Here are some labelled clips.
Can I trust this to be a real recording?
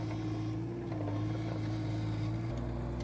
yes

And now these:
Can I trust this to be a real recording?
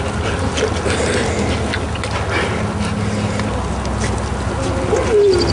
yes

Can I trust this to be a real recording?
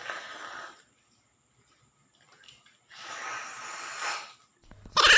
yes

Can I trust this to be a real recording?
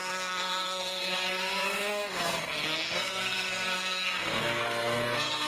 no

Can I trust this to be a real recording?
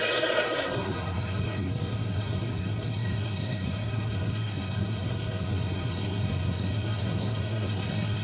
no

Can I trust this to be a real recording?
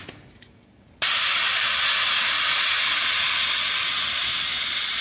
yes